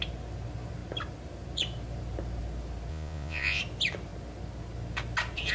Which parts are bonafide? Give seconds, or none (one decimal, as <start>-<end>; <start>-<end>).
0.0-2.9; 3.6-5.5